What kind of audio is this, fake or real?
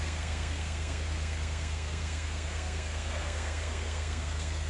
fake